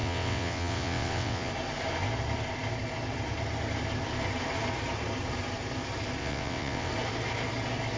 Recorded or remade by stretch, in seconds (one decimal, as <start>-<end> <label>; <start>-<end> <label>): 0.0-1.5 remade; 1.5-6.2 recorded; 6.2-6.9 remade; 6.9-8.0 recorded